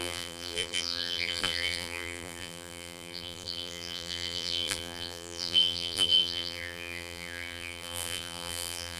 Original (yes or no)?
no